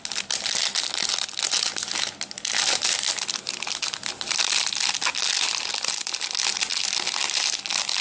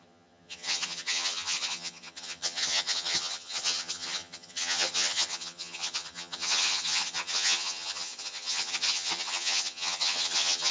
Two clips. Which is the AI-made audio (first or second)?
second